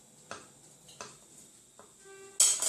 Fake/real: real